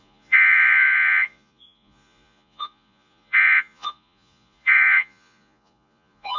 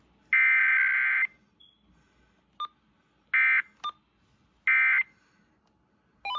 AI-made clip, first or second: first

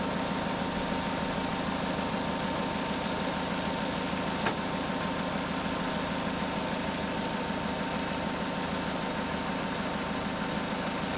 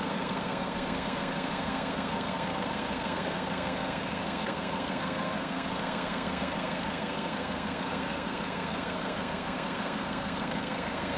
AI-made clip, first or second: second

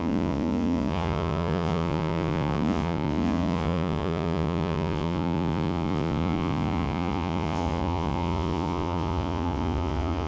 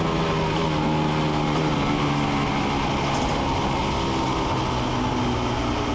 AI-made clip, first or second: first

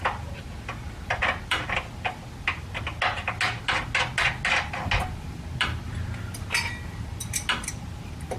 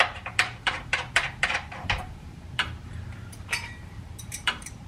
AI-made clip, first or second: second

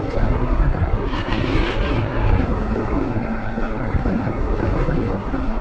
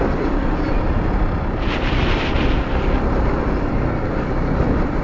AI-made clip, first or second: first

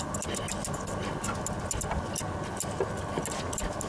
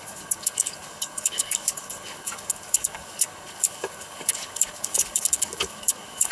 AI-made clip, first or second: second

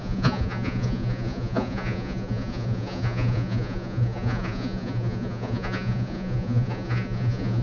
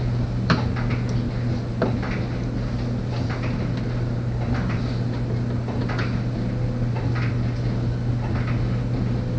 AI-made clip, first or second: first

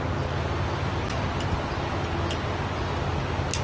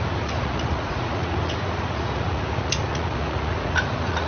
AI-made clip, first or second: second